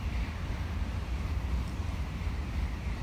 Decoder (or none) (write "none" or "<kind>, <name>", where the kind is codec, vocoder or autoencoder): none